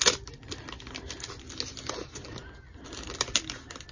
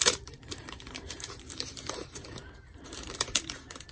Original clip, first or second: first